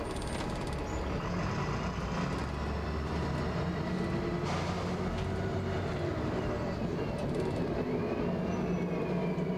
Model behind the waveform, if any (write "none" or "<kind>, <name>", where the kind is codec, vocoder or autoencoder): none